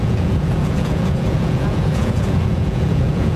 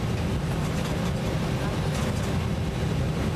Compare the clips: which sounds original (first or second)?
second